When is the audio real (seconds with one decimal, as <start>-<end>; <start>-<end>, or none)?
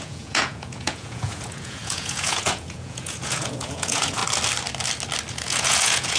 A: 4.2-5.3